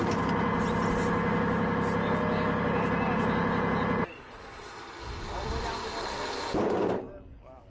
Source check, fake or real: real